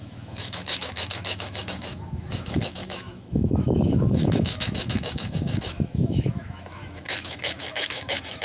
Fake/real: fake